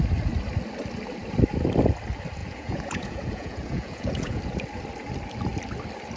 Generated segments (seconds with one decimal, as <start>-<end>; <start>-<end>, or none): 2.4-4.4